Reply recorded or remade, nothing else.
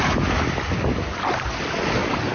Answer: recorded